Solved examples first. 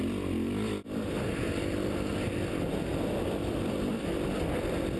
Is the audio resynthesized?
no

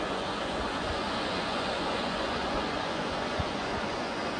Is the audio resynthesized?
yes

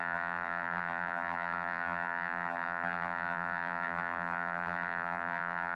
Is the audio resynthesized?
yes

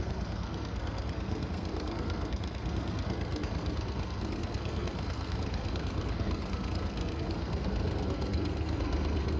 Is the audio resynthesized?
yes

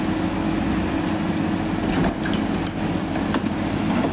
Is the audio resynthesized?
no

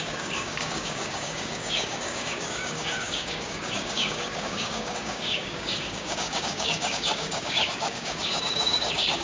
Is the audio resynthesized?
yes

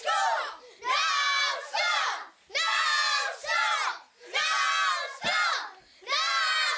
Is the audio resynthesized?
no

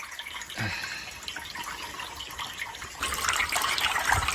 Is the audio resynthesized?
no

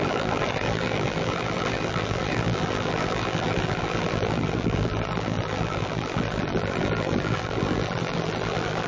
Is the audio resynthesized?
yes